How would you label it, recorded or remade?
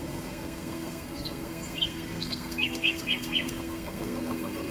remade